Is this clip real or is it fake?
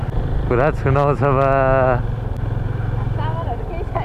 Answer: real